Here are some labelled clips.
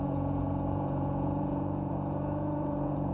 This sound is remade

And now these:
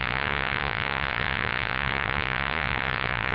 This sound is remade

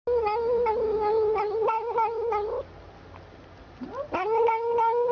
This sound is recorded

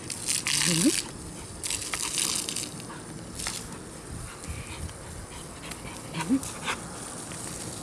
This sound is recorded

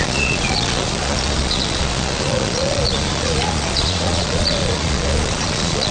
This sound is remade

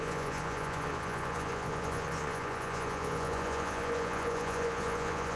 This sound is remade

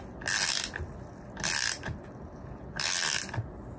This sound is recorded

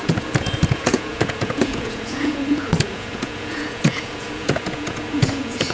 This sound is remade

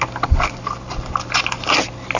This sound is recorded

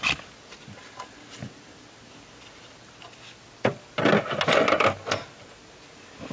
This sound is recorded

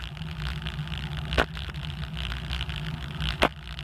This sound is recorded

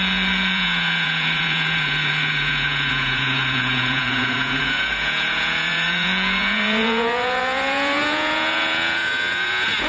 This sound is remade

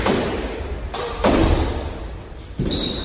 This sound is recorded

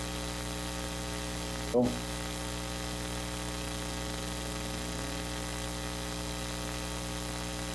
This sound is recorded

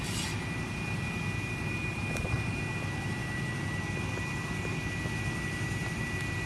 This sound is recorded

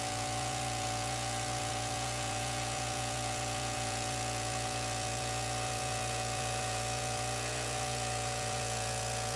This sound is remade